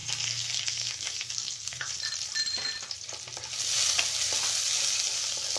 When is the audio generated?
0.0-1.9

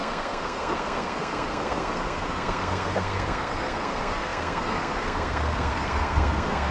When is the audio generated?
0.0-6.7

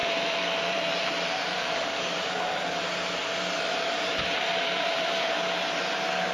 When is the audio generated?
0.0-2.8; 3.2-5.3